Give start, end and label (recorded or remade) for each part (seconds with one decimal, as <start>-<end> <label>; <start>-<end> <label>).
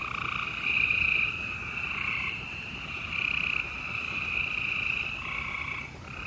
0.0-1.6 recorded; 1.6-2.8 remade; 2.8-6.3 recorded